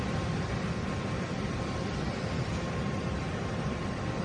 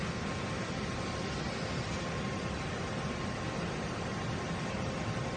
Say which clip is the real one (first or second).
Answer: second